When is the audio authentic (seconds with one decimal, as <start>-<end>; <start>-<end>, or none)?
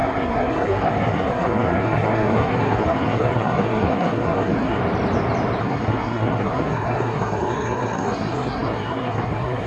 4.8-5.6